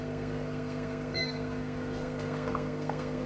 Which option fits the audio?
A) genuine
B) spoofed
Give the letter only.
B